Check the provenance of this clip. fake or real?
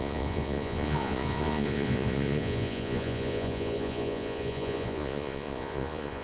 fake